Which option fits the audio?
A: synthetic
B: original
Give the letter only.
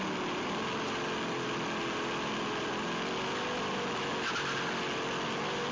B